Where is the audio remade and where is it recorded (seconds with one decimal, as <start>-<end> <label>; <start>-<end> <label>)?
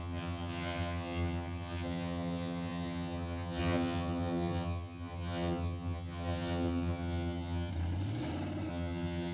0.0-7.7 remade; 7.7-8.7 recorded; 8.7-9.3 remade